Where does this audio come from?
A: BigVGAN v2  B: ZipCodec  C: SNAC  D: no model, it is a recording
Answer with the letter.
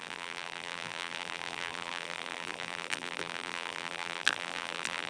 A